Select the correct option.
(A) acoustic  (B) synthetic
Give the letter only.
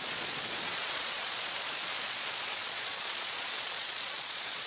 B